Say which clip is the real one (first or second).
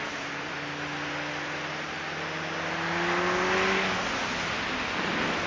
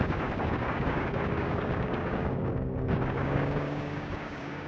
first